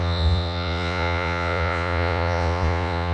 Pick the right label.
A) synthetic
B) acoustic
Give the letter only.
A